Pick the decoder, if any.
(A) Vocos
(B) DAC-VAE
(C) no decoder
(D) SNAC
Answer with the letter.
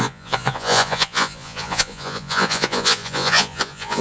A